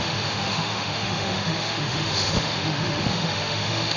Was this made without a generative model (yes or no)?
no